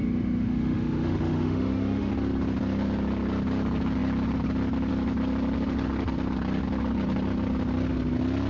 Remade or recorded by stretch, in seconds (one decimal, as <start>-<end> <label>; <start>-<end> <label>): 0.0-2.1 remade; 2.1-8.5 recorded

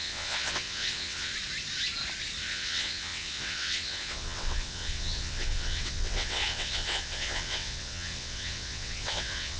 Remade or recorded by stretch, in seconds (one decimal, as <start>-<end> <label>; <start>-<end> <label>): 0.0-1.3 remade; 1.3-2.4 recorded; 2.4-9.6 remade

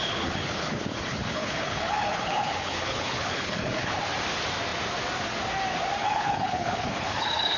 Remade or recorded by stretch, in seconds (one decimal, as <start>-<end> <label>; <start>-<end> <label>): 0.0-4.0 remade; 4.0-6.0 recorded; 6.0-7.6 remade

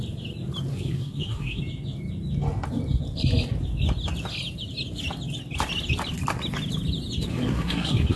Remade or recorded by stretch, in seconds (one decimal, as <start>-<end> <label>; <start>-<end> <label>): 0.0-0.7 recorded; 0.7-1.6 remade; 1.6-7.3 recorded; 7.3-8.2 remade

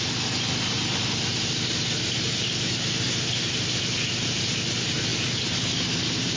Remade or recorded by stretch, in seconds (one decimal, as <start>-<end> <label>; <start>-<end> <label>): 0.0-6.4 recorded